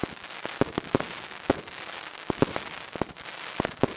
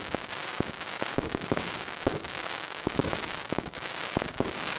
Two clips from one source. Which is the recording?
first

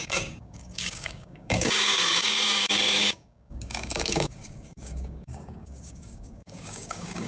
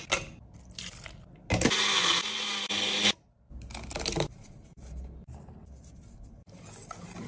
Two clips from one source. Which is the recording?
second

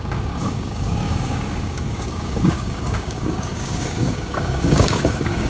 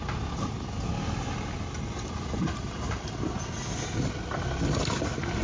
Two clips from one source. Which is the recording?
second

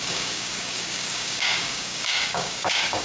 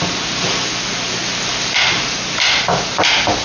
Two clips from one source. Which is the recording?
second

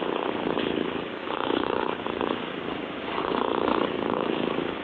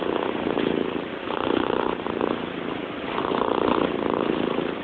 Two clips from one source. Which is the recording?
second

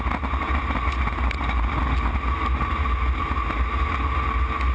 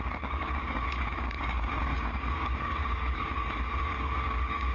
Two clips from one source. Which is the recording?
first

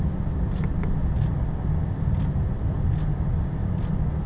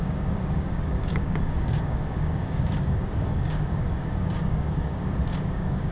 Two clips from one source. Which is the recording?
first